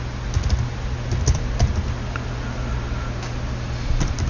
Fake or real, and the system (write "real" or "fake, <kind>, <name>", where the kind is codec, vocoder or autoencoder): real